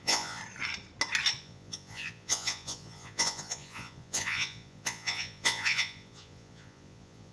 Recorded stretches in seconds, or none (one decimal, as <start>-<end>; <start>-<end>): 0.4-1.4